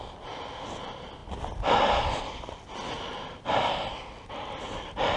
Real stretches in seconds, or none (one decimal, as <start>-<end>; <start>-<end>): 0.0-5.2